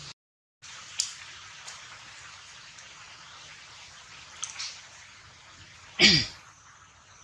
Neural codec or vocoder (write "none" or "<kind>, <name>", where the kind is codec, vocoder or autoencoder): none